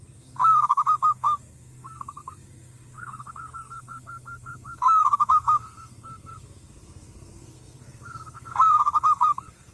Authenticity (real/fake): fake